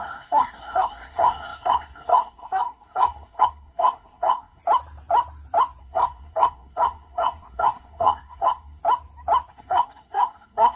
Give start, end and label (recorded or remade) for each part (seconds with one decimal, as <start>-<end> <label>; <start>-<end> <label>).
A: 0.0-4.6 remade; 4.6-5.8 recorded; 5.8-8.8 remade; 8.8-9.5 recorded; 9.5-10.8 remade